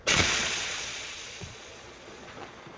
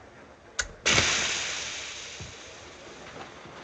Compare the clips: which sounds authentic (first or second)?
second